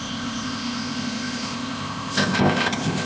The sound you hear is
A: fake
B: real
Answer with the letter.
A